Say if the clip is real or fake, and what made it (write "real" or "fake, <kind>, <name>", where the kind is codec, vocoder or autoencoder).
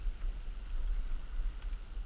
real